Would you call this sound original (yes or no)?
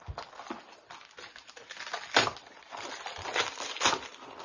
yes